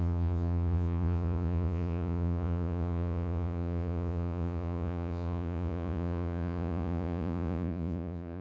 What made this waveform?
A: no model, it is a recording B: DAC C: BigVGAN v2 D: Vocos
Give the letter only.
D